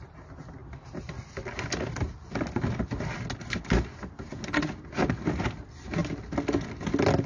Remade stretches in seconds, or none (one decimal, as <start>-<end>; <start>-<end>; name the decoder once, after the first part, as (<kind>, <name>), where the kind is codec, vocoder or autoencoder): none